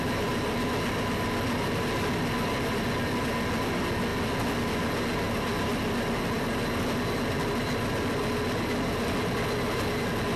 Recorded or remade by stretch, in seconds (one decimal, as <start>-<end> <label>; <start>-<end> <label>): 0.0-10.4 recorded